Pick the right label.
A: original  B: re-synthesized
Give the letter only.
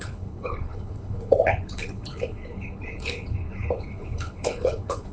B